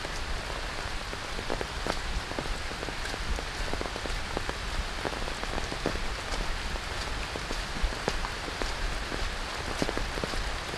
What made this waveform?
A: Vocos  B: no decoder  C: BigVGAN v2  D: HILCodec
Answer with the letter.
B